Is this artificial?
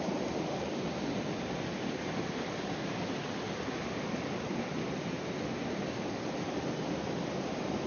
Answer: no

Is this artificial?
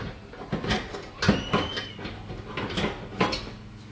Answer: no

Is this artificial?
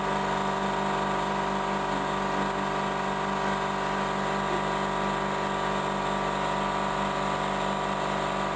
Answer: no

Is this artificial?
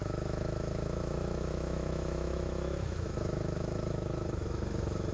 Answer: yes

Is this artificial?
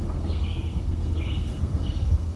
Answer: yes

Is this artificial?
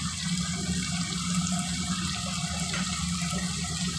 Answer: no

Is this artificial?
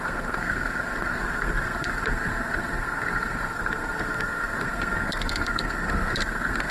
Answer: yes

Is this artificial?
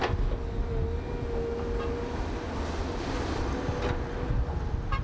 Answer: no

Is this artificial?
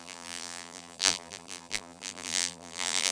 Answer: yes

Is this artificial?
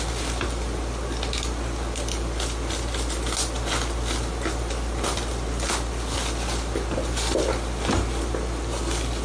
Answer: no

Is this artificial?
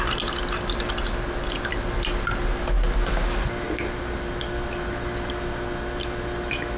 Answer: no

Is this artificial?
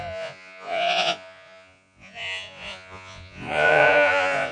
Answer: yes